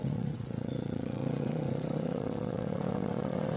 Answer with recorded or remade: remade